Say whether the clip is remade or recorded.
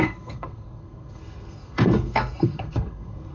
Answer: remade